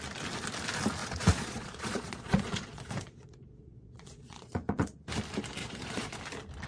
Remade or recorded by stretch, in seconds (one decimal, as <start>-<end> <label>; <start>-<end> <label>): 0.0-1.0 recorded; 1.0-5.0 remade; 5.0-5.6 recorded; 5.6-6.2 remade; 6.2-6.7 recorded